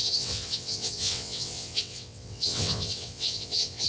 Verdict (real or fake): fake